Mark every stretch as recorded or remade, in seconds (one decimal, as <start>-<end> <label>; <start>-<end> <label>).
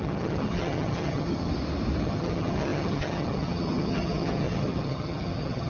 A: 0.0-1.5 remade; 1.5-2.0 recorded; 2.0-5.7 remade